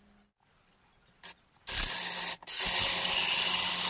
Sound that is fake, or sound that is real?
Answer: real